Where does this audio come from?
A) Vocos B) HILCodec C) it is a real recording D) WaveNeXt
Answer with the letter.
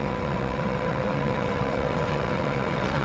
D